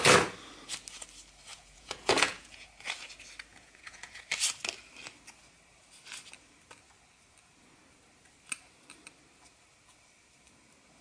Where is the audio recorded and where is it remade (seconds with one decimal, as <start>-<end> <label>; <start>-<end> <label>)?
0.0-1.5 recorded; 1.5-2.7 remade; 2.7-3.5 recorded; 3.5-4.2 remade; 4.2-11.0 recorded